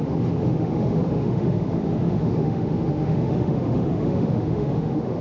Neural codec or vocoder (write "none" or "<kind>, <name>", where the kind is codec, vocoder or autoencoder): autoencoder, DAC-VAE